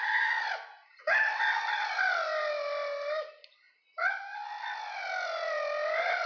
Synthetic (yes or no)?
no